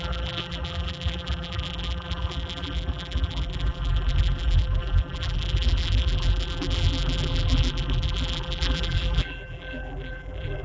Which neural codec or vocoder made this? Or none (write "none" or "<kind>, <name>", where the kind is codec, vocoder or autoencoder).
vocoder, BigVGAN v2